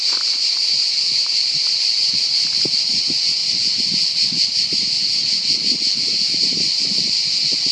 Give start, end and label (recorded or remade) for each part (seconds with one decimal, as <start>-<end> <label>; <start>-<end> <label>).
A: 0.0-7.7 recorded